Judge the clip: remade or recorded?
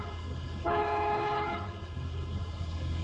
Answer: remade